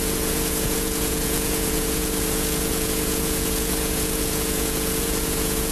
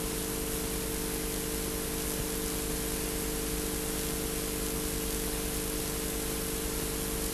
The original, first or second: second